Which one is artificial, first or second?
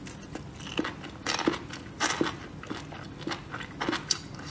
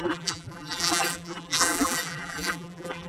second